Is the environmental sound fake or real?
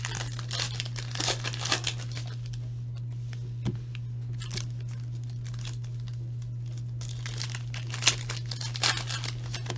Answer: real